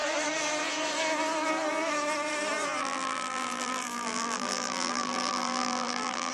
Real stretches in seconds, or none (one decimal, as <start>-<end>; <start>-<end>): 0.0-2.8